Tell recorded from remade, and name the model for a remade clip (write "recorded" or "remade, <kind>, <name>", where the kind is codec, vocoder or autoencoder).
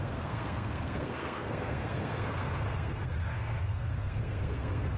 remade, codec, SNAC